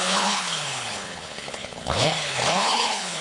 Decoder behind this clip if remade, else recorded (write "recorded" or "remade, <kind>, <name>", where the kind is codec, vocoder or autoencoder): remade, codec, HILCodec